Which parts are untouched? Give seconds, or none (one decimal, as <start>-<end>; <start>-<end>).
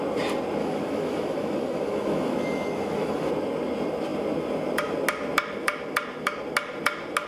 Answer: 0.0-0.6; 3.3-7.3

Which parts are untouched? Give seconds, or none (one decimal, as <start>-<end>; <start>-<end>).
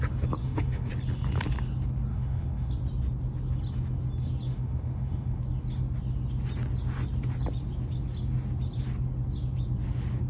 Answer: 0.0-0.4; 0.9-2.1; 2.7-4.5; 5.4-10.3